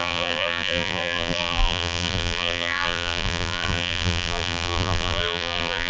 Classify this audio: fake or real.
fake